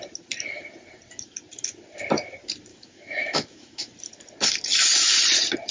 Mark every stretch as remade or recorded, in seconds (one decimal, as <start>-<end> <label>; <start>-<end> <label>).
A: 0.0-2.7 recorded; 2.7-3.9 remade; 3.9-5.7 recorded